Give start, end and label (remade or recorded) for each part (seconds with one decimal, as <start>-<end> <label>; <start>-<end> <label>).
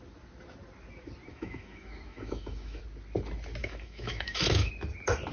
0.0-1.3 recorded; 1.3-2.8 remade; 2.8-3.6 recorded; 3.6-4.7 remade; 4.7-5.3 recorded